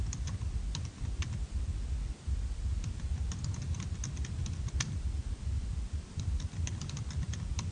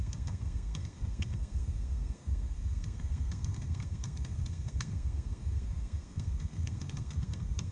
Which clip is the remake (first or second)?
second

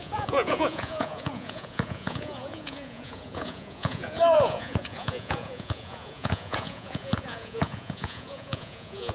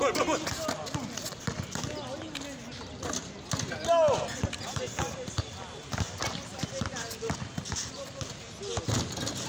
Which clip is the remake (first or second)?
first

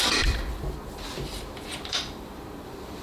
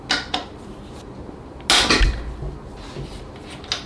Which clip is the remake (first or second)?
first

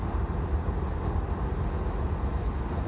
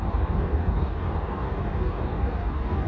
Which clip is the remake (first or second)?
second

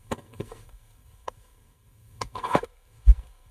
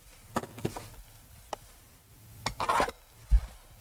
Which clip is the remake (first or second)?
first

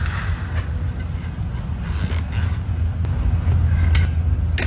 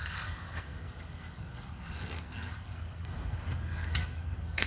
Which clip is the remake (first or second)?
second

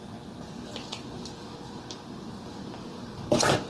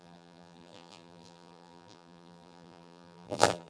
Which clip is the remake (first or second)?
second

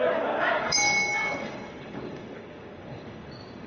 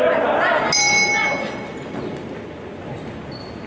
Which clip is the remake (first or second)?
first